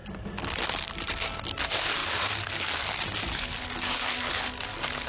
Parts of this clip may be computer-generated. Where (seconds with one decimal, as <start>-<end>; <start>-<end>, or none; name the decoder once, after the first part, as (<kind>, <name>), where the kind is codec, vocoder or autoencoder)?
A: none